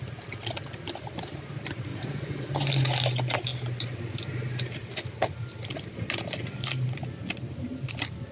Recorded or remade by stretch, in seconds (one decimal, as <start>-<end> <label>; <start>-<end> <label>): 0.0-1.9 recorded; 1.9-2.5 remade; 2.5-8.3 recorded